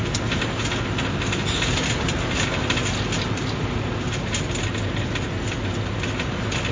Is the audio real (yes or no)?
yes